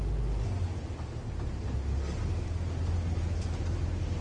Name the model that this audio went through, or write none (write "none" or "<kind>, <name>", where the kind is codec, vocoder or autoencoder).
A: none